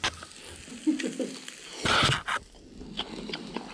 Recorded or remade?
recorded